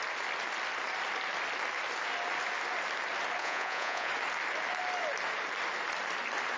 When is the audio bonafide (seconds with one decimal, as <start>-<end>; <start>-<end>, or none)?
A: 0.0-3.4; 4.1-6.6